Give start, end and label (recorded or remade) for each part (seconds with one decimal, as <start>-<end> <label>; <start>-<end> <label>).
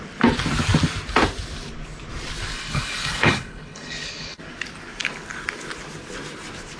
0.0-2.5 recorded; 2.5-4.4 remade; 4.4-6.8 recorded